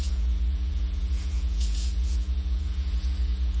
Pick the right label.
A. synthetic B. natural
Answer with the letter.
A